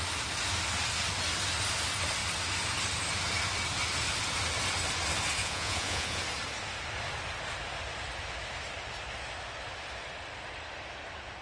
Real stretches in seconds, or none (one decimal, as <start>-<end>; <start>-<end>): 0.0-5.4; 6.2-11.4